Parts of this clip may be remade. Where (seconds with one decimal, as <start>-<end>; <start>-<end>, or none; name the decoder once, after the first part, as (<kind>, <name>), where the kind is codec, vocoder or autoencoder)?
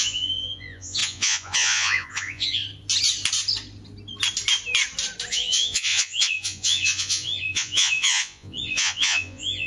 0.0-2.6 (vocoder, Vocos); 5.3-9.7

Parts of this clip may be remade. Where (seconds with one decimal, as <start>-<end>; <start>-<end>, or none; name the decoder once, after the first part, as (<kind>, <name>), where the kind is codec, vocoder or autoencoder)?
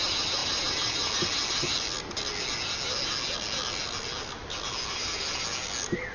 none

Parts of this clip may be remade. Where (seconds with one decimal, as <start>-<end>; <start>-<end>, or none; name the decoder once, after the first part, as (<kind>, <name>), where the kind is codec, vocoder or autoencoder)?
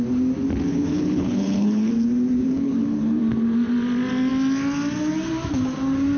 0.7-1.9 (codec, HILCodec); 2.5-3.2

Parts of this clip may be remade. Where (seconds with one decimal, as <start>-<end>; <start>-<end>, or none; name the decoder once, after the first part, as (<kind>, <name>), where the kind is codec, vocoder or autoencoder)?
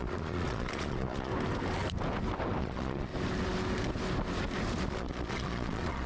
0.0-1.3 (vocoder, Vocos); 2.6-3.1; 4.9-6.1